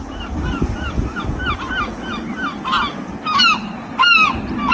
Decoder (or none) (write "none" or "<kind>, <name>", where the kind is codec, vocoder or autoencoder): none